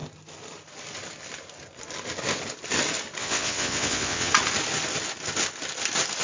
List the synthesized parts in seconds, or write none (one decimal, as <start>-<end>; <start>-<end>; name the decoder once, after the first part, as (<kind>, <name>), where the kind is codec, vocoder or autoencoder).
3.2-4.3 (vocoder, WaveNeXt)